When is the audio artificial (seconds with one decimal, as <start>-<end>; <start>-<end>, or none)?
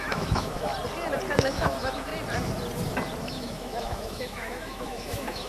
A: 0.0-0.7; 1.3-2.1; 3.2-5.5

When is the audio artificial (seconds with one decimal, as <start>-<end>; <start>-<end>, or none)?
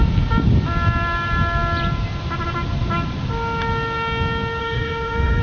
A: 4.6-5.4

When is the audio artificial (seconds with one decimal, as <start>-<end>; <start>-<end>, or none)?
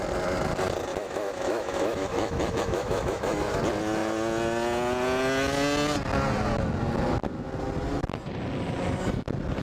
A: 0.9-3.6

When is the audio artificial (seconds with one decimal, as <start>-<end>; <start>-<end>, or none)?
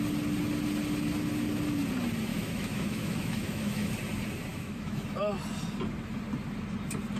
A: 2.3-3.9; 4.5-5.3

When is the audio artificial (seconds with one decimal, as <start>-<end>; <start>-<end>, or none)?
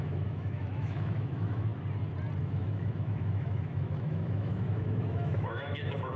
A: 0.0-1.7; 2.4-6.2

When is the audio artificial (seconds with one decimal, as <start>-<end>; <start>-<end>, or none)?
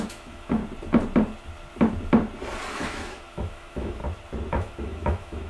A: 0.0-0.6; 2.7-4.0; 4.5-5.5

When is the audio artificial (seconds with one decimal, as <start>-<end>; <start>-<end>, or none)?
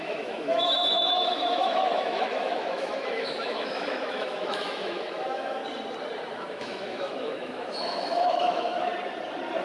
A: 0.0-5.6; 6.3-8.9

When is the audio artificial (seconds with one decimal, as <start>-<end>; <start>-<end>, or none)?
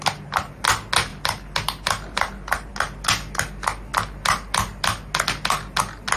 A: none